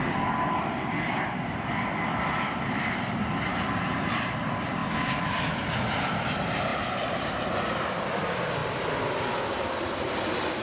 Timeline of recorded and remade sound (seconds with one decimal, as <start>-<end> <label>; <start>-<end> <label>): 0.0-4.8 remade; 4.8-5.7 recorded; 5.7-10.6 remade